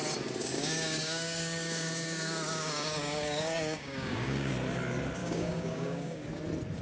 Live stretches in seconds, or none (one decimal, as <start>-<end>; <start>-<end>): 0.0-0.4; 4.5-5.2; 6.3-6.8

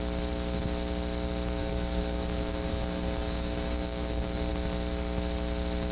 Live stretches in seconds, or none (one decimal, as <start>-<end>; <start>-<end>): 0.0-1.6; 4.5-5.9

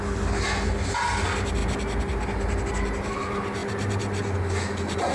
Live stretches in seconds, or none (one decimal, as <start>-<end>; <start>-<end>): 0.0-5.1

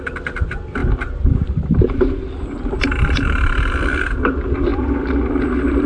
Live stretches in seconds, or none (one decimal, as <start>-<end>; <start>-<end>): 0.0-5.9

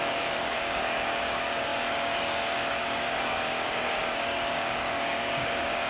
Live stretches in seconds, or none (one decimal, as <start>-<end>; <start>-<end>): none

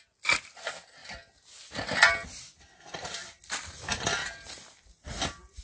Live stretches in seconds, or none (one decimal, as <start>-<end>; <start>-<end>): 0.0-5.6

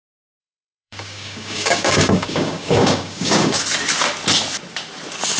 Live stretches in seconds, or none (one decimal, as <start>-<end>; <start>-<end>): 0.0-0.4; 3.6-5.4